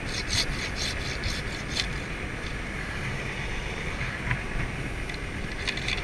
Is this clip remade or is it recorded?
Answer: recorded